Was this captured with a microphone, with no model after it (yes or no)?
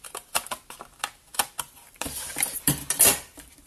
yes